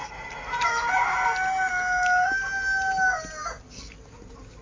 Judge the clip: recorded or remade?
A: recorded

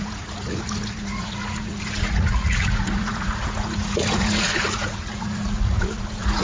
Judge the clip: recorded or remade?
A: remade